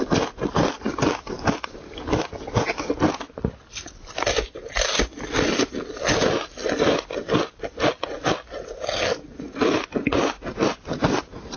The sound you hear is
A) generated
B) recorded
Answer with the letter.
B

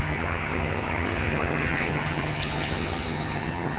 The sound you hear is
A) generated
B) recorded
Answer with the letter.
A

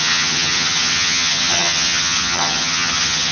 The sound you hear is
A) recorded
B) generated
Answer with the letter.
B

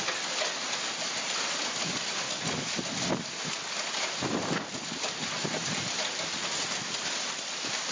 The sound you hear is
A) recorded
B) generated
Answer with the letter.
A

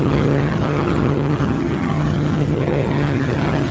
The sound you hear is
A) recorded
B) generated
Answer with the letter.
B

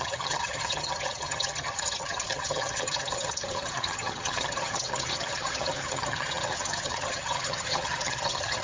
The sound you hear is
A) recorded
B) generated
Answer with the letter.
B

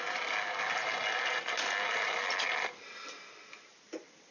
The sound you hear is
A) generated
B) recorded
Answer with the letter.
B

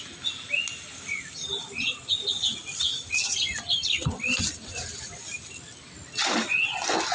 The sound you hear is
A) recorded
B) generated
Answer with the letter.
A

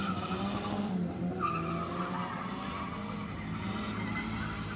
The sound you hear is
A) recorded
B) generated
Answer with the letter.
A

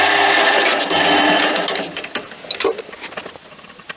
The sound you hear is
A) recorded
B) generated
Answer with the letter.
A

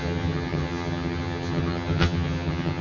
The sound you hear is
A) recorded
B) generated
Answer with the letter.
B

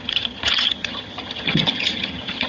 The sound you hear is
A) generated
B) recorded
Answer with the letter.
A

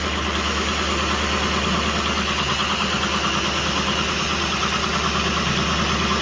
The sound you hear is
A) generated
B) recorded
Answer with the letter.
B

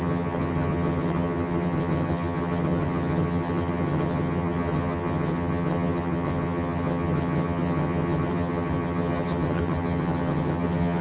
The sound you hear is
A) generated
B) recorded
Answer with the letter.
A